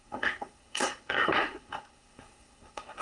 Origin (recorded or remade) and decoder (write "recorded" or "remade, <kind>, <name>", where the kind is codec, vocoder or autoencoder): remade, codec, SNAC